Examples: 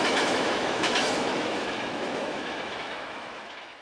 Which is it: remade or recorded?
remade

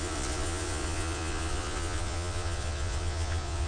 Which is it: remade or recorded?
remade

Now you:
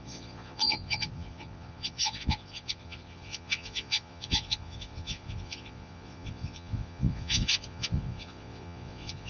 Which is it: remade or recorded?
remade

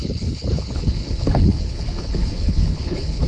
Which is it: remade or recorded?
remade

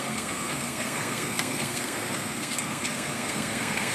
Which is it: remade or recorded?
remade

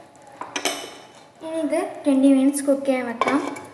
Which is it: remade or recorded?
recorded